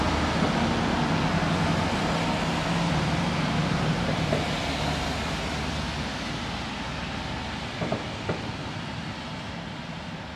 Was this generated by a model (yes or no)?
no